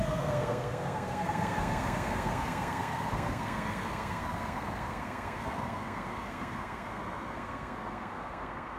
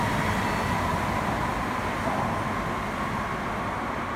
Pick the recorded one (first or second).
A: second